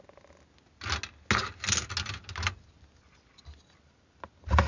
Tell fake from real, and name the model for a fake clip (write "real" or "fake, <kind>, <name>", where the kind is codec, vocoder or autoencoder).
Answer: real